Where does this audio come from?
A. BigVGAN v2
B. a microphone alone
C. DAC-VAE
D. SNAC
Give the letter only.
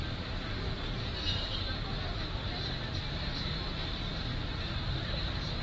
A